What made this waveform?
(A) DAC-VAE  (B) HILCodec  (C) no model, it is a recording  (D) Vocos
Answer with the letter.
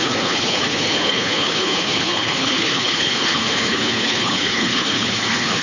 B